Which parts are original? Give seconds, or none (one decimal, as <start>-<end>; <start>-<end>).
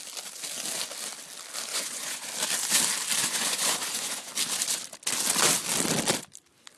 0.0-1.7; 2.3-3.2; 4.3-6.8